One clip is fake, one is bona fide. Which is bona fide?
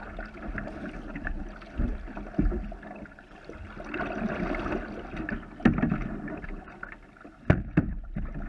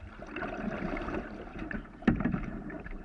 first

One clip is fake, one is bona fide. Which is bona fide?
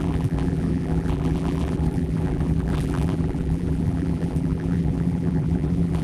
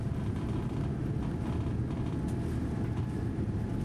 second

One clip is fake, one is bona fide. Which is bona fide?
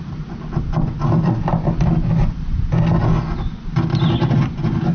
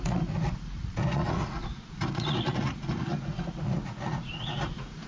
first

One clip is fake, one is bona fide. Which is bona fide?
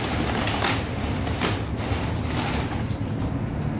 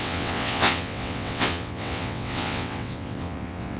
first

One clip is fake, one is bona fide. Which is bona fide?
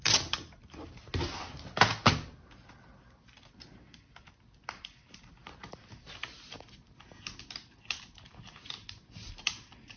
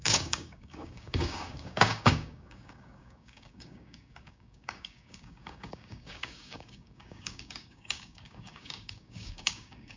first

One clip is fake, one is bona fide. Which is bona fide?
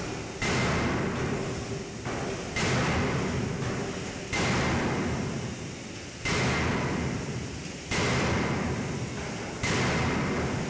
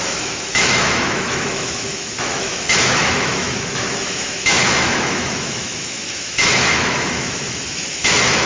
first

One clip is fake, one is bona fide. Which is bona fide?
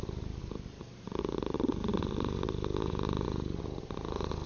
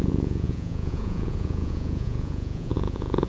first